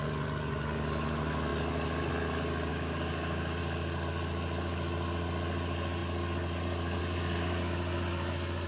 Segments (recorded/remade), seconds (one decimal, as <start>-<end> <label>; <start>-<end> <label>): 0.0-2.7 recorded; 2.7-3.6 remade; 3.6-8.7 recorded